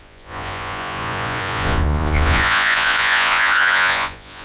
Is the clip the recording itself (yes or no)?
no